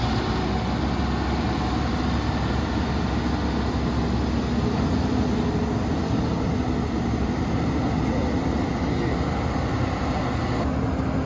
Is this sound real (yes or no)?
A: yes